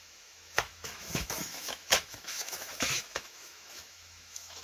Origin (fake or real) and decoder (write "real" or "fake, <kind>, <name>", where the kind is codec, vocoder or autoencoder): fake, autoencoder, DAC-VAE